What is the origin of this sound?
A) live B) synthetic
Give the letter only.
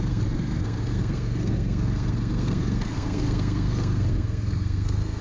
B